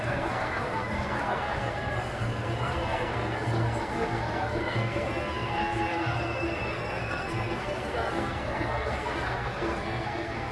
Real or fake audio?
fake